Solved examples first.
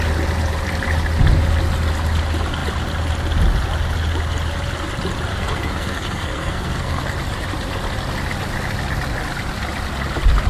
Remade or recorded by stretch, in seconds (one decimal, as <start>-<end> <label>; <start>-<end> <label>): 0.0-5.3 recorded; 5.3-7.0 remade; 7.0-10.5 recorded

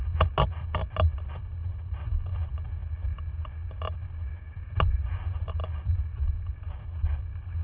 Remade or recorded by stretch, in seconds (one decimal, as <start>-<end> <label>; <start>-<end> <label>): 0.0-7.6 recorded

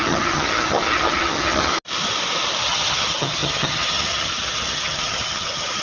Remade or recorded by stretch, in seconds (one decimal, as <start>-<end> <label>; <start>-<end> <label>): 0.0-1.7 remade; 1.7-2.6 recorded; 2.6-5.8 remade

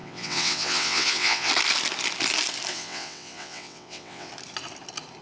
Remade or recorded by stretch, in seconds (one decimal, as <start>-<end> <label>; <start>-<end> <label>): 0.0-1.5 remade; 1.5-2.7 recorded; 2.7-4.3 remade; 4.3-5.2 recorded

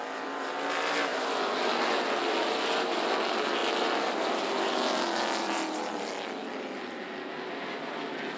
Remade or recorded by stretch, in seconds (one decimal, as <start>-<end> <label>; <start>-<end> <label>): 0.0-8.4 recorded

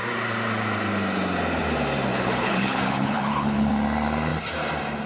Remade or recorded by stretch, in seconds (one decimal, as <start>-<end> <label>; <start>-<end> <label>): 0.0-2.1 recorded; 2.1-3.7 remade; 3.7-5.1 recorded

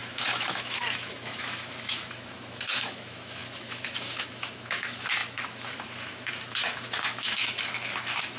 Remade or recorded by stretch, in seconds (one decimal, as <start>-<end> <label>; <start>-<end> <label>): 0.0-8.4 remade